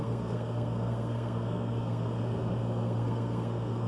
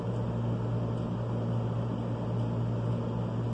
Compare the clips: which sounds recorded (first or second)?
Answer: second